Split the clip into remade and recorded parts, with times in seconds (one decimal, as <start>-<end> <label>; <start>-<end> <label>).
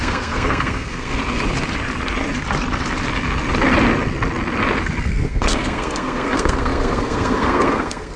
0.0-1.2 remade; 1.2-5.1 recorded; 5.1-8.2 remade